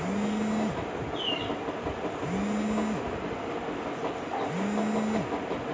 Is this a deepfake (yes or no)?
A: no